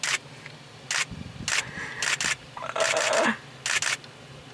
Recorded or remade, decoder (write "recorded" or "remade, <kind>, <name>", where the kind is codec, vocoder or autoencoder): recorded